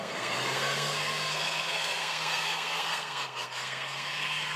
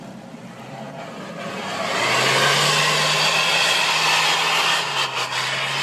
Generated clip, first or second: first